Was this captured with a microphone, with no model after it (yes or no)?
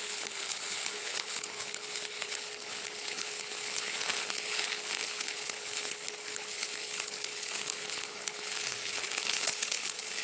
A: no